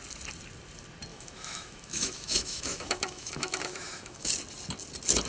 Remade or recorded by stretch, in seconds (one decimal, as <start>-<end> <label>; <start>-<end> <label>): 0.0-1.1 recorded; 1.1-4.3 remade; 4.3-5.3 recorded

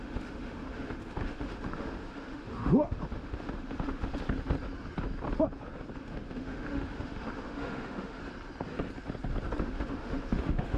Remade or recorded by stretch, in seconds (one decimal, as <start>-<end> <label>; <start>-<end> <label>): 0.0-4.1 remade; 4.1-6.0 recorded; 6.0-8.2 remade; 8.2-9.6 recorded; 9.6-10.8 remade

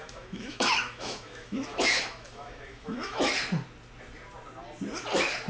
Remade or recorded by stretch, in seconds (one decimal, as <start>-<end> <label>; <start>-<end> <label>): 0.0-3.3 remade; 3.3-5.5 recorded

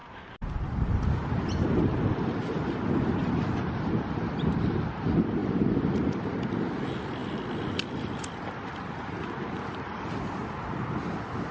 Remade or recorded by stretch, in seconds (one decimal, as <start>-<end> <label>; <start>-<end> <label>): 0.0-11.5 recorded

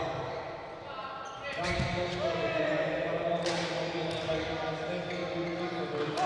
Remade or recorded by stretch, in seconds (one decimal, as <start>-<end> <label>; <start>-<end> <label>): 0.0-6.3 recorded

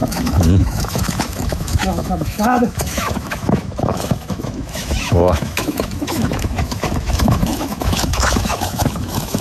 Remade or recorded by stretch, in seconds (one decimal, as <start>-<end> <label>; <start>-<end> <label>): 0.0-9.4 remade

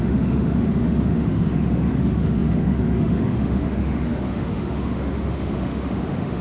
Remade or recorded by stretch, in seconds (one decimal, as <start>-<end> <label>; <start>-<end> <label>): 0.0-6.4 remade